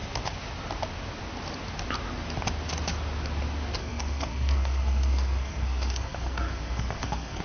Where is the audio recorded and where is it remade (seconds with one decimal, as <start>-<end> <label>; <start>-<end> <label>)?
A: 0.0-3.8 recorded; 3.8-7.4 remade